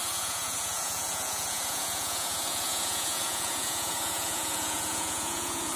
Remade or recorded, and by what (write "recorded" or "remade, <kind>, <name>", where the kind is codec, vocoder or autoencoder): remade, vocoder, Vocos